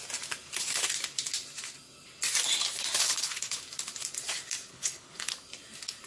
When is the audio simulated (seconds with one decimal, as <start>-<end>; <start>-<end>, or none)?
3.0-3.6; 4.7-5.3